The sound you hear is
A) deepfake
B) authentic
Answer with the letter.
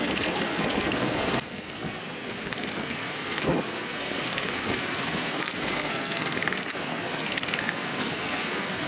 A